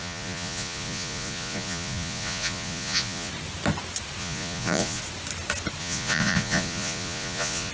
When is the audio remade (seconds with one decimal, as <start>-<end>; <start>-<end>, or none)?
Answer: 0.0-3.3; 4.2-5.0; 5.8-7.7

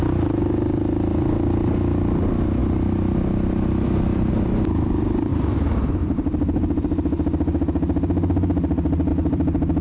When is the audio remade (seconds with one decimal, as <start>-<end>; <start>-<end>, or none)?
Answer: 5.3-5.9; 9.1-9.8

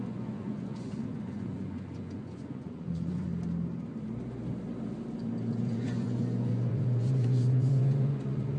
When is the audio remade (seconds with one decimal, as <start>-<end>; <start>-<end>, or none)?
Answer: 0.0-3.3; 5.6-8.6

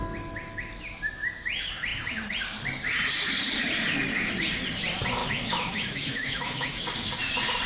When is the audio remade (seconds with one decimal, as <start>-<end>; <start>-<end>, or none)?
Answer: 5.2-6.8

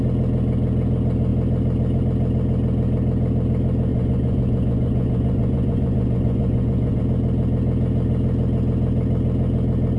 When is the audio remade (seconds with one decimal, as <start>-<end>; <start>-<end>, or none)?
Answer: 3.9-7.0